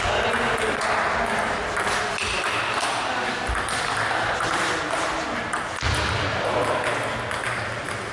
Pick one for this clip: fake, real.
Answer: real